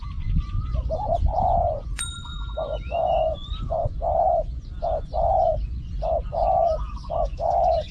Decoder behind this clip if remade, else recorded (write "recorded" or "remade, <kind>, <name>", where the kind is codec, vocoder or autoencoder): remade, vocoder, Vocos